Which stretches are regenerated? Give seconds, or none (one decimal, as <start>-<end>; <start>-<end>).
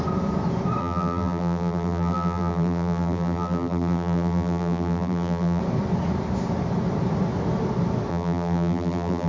0.8-5.6; 8.1-9.3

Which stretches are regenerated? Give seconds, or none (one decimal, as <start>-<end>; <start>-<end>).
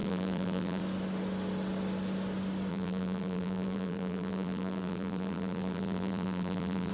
0.0-0.8; 2.7-6.9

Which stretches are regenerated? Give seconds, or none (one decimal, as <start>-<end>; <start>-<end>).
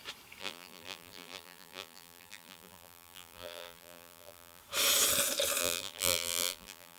0.4-4.6; 5.6-7.0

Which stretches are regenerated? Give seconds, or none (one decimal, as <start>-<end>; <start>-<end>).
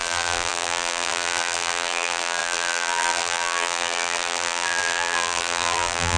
0.0-6.2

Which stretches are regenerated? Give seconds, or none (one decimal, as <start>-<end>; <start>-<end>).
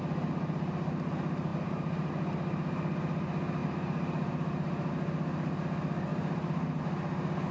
1.5-2.1; 3.6-4.9; 6.1-6.8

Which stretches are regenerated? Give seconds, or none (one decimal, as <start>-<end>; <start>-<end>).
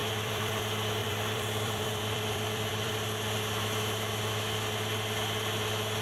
0.0-0.6; 1.0-2.9; 3.6-4.2